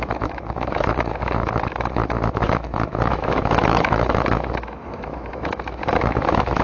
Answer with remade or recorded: remade